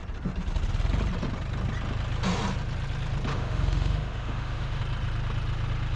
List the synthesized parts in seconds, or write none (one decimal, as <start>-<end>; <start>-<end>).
3.3-4.8